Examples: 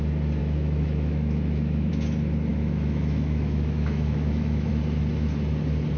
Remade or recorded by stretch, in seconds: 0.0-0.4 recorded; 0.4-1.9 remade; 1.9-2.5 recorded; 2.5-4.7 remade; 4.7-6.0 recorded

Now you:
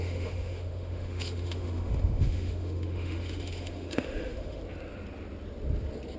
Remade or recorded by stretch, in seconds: 0.0-4.6 remade; 4.6-6.2 recorded